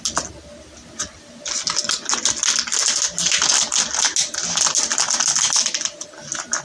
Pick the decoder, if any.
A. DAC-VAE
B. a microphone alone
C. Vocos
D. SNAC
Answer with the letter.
B